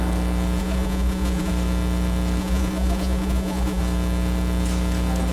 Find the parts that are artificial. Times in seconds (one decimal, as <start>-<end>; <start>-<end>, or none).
0.6-1.5; 2.4-3.8